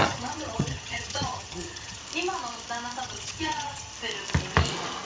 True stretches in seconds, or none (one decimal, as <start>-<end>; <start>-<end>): 2.0-3.0; 3.9-5.1